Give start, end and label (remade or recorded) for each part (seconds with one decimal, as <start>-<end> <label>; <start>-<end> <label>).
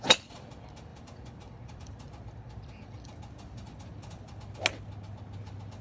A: 0.0-0.9 recorded; 0.9-4.4 remade; 4.4-5.8 recorded